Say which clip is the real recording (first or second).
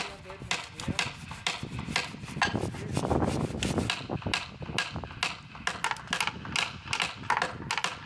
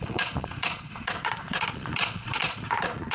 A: first